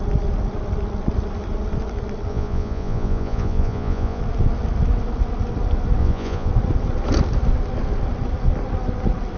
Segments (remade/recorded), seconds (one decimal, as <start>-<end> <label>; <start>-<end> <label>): 0.0-2.3 recorded; 2.3-4.2 remade; 4.2-6.0 recorded; 6.0-6.5 remade; 6.5-9.4 recorded